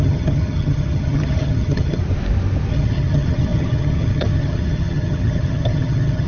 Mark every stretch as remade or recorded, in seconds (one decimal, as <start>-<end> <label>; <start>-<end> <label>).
0.0-2.0 remade; 2.0-2.7 recorded; 2.7-6.3 remade